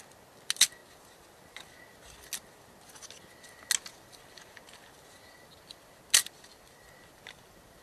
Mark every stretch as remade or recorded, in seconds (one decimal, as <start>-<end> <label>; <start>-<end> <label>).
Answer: 0.0-7.8 recorded